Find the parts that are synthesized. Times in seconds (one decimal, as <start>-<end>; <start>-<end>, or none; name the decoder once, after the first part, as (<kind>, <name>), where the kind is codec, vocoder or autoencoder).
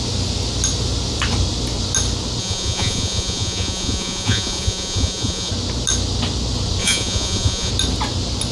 2.4-5.5 (vocoder, Vocos); 6.8-7.7